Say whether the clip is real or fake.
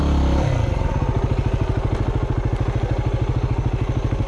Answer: real